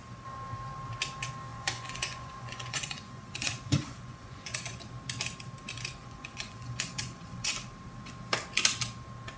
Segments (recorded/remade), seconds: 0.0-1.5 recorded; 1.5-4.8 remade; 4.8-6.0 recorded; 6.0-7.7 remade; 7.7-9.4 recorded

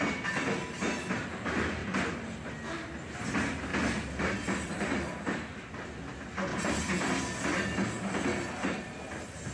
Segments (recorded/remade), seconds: 0.0-1.8 recorded; 1.8-2.5 remade; 2.5-6.5 recorded; 6.5-7.1 remade; 7.1-9.5 recorded

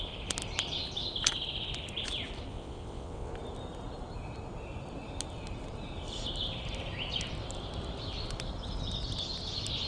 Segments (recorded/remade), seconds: 0.0-2.5 recorded; 2.5-3.3 remade; 3.3-9.9 recorded